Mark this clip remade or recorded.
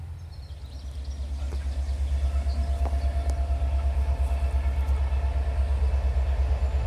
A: recorded